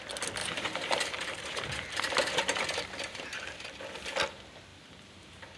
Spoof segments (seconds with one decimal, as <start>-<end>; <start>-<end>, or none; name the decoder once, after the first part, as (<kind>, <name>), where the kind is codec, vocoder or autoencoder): 0.4-3.8 (vocoder, BigVGAN v2); 4.7-5.6